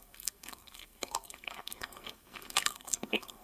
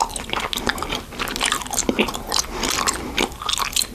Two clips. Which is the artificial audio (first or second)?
first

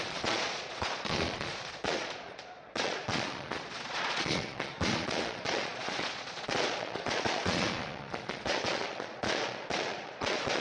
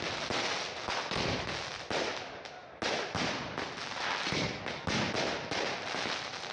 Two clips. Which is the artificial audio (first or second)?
first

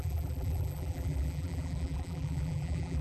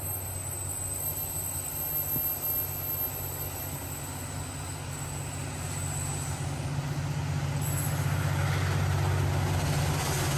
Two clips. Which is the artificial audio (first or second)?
first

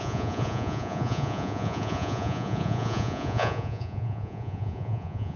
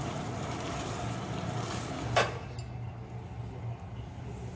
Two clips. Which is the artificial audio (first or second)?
first